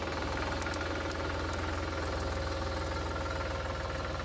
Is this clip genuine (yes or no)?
yes